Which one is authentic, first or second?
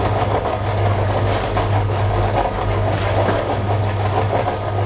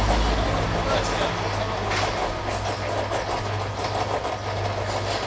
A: second